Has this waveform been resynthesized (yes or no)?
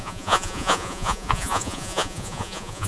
yes